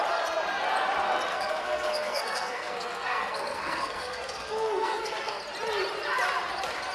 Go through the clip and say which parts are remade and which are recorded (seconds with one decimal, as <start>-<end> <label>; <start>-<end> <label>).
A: 0.0-1.3 recorded; 1.3-5.4 remade; 5.4-6.9 recorded